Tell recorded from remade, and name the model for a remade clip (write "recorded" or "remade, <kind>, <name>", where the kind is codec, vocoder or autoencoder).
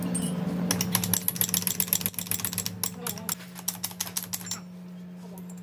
recorded